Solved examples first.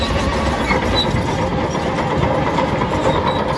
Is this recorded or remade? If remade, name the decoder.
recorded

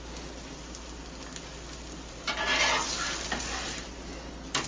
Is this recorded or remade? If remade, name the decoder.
recorded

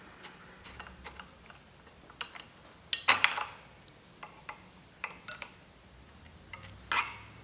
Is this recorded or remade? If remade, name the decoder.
recorded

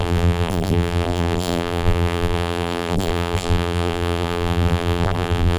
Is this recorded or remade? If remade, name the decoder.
remade, vocoder, BigVGAN v2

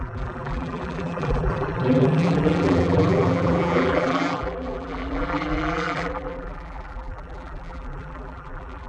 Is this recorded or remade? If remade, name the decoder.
remade, vocoder, BigVGAN v2